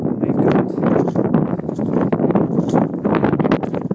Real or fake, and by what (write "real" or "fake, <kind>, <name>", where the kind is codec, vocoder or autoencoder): real